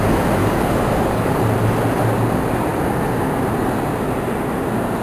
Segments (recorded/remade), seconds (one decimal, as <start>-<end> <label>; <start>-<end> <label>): 0.0-0.4 recorded; 0.4-1.4 remade; 1.4-5.0 recorded